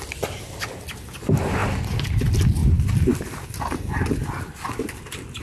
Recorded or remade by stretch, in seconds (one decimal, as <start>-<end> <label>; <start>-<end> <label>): 0.0-5.4 recorded